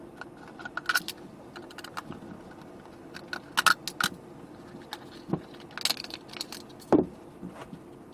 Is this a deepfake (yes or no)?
no